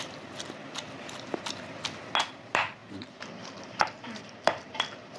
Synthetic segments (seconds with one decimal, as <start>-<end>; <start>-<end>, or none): 2.8-4.7